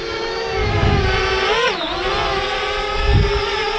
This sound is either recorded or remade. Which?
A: recorded